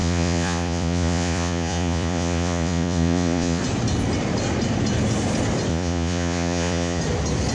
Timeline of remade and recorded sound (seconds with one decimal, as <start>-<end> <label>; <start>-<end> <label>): 0.0-3.6 remade; 3.6-5.7 recorded; 5.7-7.0 remade; 7.0-7.5 recorded